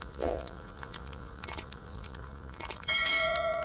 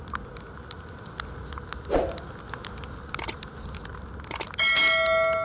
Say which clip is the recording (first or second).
second